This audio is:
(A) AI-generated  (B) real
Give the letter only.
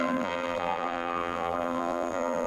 A